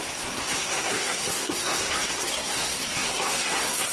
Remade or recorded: remade